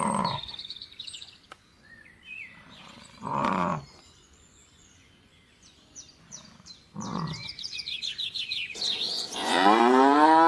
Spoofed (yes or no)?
yes